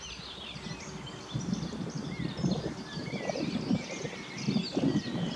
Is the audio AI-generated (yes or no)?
no